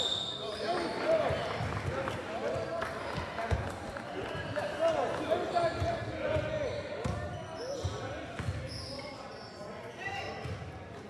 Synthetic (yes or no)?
no